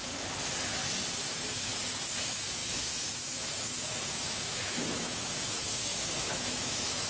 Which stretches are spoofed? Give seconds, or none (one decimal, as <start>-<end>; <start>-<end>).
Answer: 1.2-1.7; 2.2-7.1